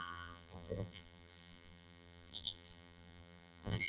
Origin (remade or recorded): remade